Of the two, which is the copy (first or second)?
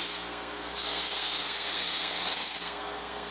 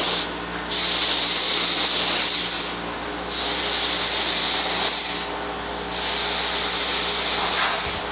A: first